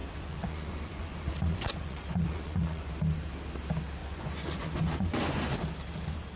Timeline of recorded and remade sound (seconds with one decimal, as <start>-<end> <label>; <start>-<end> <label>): 0.0-2.9 remade; 2.9-4.0 recorded; 4.0-5.4 remade; 5.4-6.4 recorded